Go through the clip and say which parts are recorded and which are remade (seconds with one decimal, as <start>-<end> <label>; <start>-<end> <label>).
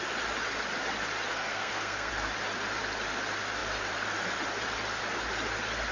0.0-1.3 recorded; 1.3-2.1 remade; 2.1-5.9 recorded